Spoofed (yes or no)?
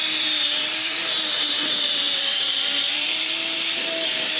yes